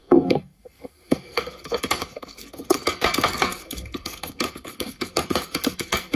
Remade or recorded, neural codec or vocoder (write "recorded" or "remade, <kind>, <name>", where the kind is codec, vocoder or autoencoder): remade, codec, SNAC